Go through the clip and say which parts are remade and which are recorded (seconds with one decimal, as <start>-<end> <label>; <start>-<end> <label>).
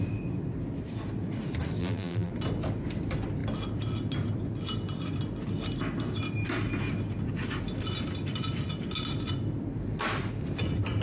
0.0-1.8 recorded; 1.8-2.3 remade; 2.3-11.0 recorded